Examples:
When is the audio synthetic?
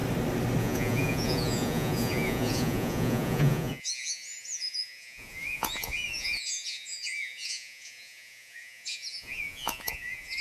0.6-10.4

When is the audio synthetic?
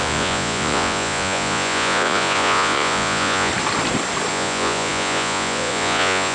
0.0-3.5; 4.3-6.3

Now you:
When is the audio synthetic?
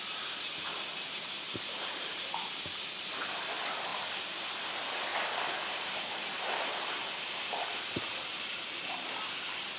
none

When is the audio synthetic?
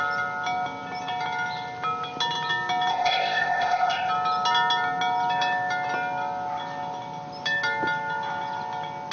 2.9-4.1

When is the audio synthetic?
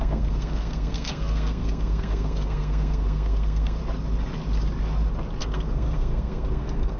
0.0-3.8; 5.4-7.0